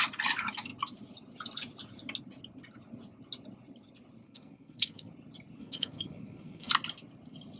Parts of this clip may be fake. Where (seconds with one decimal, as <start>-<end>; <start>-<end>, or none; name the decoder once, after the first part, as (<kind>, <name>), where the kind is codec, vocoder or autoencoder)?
4.2-5.1 (codec, SNAC); 5.6-6.7